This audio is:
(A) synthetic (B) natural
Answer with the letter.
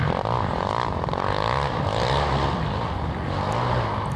B